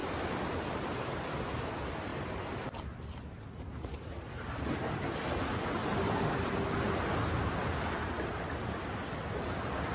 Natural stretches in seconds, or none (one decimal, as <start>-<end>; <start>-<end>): 1.2-2.1; 5.5-9.9